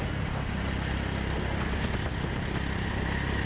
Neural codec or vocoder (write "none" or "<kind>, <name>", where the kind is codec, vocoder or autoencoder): none